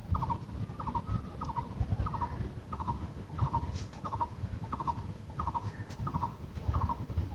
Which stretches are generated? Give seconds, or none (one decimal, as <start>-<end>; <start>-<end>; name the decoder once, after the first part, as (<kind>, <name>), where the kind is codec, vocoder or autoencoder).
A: 2.6-7.3 (autoencoder, DAC-VAE)